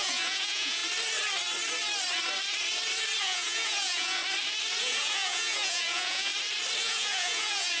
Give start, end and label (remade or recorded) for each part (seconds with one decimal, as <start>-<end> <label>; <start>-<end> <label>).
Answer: 0.0-0.8 remade; 0.8-3.2 recorded; 3.2-4.2 remade; 4.2-4.8 recorded; 4.8-6.3 remade; 6.3-6.8 recorded; 6.8-7.8 remade